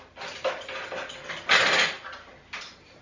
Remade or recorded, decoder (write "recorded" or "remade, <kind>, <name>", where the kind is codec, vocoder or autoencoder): recorded